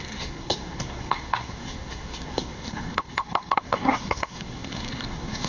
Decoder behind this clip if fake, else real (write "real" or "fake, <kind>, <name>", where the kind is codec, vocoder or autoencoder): fake, codec, SNAC